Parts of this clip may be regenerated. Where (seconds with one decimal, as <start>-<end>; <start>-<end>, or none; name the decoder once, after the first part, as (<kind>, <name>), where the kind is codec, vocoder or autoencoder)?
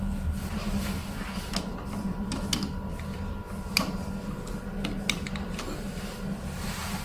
none